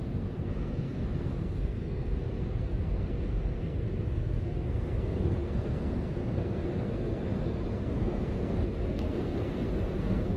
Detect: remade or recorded remade